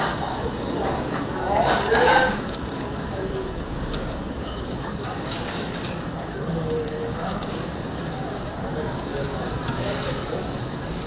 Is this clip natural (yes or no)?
no